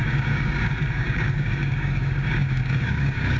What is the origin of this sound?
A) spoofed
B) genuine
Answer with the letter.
A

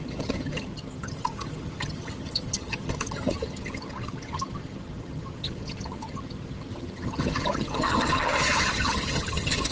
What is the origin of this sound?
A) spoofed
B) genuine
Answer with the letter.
A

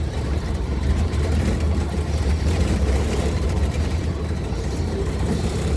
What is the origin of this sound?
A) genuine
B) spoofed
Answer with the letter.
B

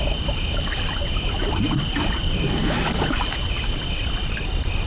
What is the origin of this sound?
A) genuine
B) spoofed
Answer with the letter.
A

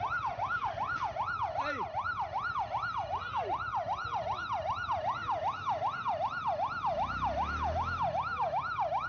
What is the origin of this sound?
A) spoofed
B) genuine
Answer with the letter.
B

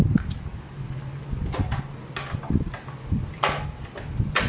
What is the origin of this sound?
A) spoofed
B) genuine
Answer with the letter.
B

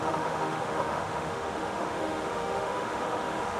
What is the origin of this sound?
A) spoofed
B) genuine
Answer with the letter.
A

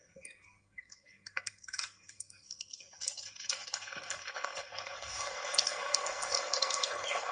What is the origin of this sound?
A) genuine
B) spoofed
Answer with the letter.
B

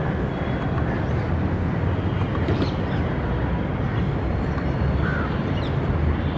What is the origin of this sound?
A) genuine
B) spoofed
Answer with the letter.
A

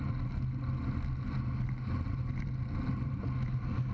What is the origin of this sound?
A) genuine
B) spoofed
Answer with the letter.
A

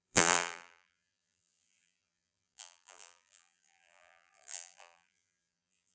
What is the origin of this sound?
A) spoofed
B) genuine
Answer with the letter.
A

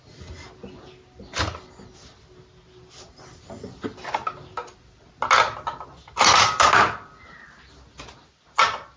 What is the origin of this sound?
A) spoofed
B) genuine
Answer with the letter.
B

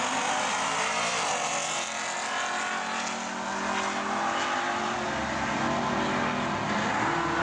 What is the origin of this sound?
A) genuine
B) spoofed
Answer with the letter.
A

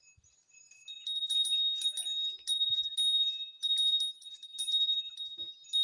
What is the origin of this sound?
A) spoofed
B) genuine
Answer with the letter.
B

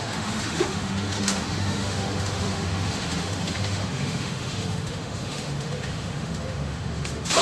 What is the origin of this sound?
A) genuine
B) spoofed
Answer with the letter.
B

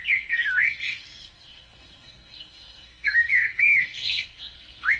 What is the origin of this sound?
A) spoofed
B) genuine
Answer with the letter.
A